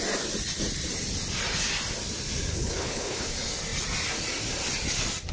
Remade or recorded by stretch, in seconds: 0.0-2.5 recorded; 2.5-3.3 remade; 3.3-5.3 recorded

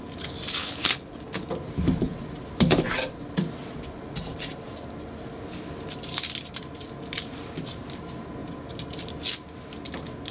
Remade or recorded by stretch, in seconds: 0.0-0.6 recorded; 0.6-1.5 remade; 1.5-10.3 recorded

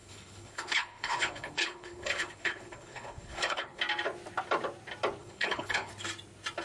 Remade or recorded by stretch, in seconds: 0.0-3.8 remade; 3.8-5.2 recorded; 5.2-5.9 remade; 5.9-6.6 recorded

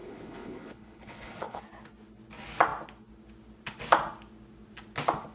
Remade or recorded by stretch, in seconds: 0.0-1.6 remade; 1.6-5.3 recorded